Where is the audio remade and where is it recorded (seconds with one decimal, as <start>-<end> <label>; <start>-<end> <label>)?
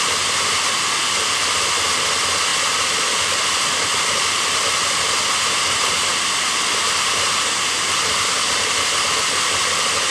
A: 0.0-10.1 recorded